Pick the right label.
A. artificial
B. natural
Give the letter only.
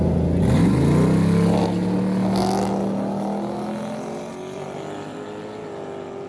B